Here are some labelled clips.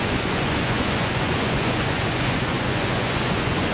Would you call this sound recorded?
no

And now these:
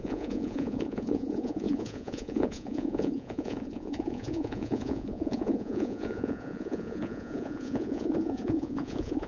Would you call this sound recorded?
no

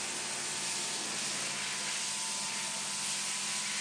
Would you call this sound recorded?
yes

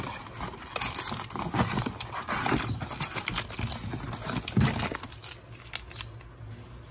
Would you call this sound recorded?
yes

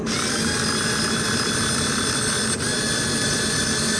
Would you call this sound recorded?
yes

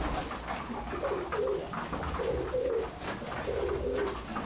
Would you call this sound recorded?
yes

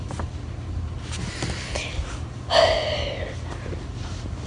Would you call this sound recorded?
yes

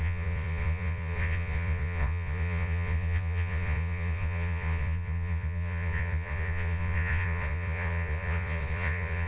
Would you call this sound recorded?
no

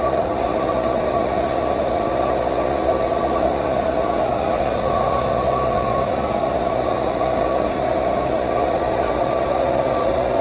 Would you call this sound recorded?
no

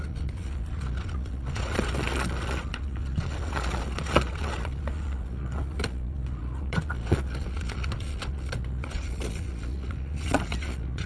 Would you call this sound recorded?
no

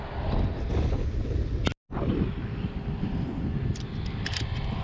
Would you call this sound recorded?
yes